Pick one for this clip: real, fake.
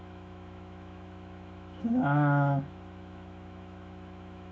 fake